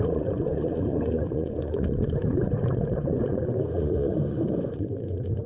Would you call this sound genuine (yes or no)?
no